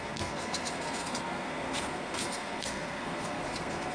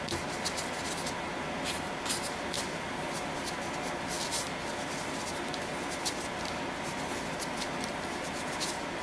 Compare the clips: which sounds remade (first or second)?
first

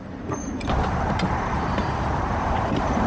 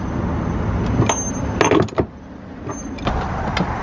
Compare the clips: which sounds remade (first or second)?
first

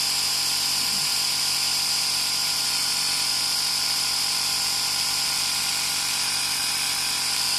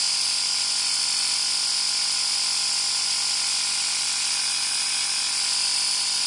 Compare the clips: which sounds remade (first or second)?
first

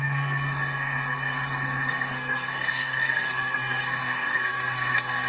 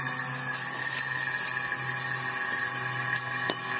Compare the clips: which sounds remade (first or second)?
first